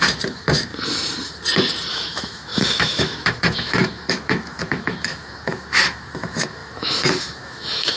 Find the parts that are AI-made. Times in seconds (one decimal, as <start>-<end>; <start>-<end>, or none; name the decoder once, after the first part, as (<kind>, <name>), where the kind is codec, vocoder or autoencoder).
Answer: 0.0-0.7 (autoencoder, DAC-VAE); 1.9-8.0